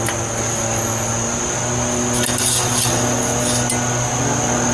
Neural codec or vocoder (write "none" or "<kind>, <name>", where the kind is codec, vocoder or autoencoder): none